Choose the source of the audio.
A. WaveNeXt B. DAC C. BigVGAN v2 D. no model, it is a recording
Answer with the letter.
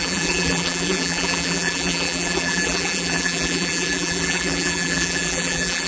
C